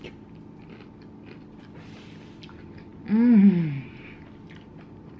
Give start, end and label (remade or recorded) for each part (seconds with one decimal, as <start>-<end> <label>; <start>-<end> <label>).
0.0-5.2 recorded